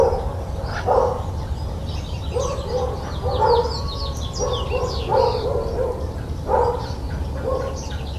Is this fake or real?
real